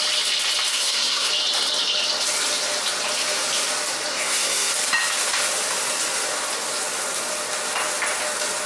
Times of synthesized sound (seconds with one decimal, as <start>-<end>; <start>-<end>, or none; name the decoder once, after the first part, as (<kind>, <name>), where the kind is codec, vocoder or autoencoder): 0.7-1.3 (codec, SNAC); 4.1-4.7